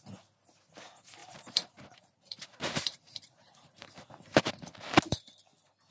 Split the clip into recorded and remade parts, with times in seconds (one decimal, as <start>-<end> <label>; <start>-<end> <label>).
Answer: 0.0-1.2 recorded; 1.2-4.7 remade; 4.7-5.9 recorded